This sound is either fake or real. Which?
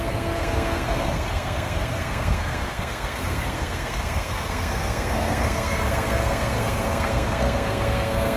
fake